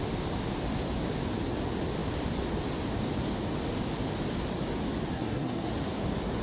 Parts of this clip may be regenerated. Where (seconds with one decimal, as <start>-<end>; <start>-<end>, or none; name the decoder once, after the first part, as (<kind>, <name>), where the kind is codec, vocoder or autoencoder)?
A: 5.1-5.7 (codec, SNAC)